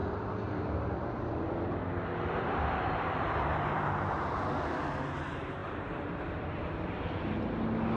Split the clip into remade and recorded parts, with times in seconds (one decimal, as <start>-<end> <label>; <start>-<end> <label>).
0.0-4.0 remade; 4.0-5.6 recorded; 5.6-7.3 remade; 7.3-8.0 recorded